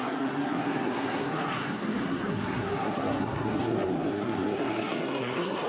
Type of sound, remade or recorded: remade